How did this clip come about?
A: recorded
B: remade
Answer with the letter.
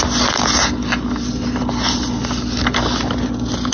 A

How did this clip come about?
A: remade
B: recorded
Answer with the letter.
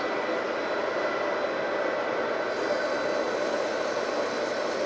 B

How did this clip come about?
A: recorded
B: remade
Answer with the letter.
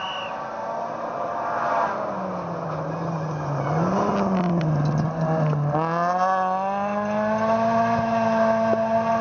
A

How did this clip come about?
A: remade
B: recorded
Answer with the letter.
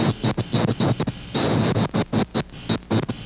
B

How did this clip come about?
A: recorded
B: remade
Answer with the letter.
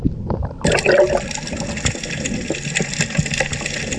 A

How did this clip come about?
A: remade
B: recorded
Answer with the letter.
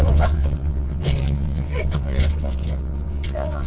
A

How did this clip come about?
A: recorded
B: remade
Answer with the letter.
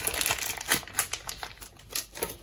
A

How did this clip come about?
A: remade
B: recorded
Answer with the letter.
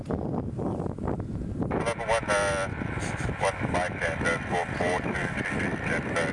B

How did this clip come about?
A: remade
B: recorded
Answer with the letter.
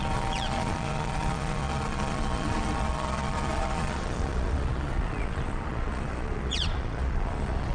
A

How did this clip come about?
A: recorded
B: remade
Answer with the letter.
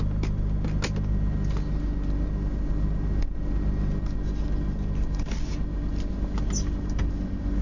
A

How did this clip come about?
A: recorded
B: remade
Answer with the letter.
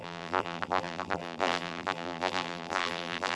B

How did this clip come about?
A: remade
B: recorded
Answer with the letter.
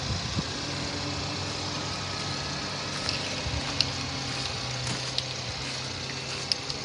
B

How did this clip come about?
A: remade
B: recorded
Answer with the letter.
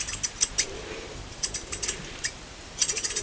B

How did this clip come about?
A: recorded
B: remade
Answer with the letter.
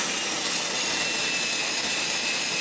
A